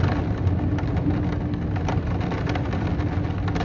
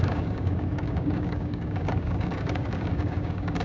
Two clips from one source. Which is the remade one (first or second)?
second